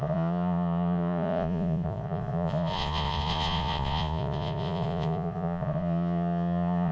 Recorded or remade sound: remade